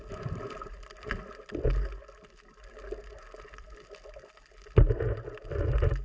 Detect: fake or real real